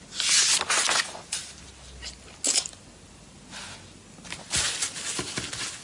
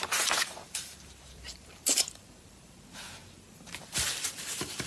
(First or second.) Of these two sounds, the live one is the first